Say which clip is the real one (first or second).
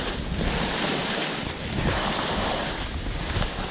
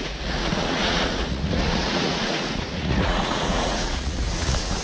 first